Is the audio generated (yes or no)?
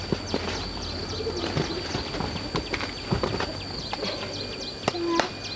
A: no